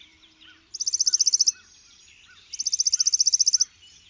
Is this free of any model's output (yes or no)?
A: yes